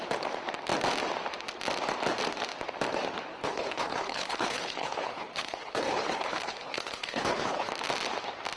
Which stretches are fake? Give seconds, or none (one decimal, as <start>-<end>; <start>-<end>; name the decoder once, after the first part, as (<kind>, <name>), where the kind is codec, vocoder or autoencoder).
3.4-7.7 (codec, HILCodec)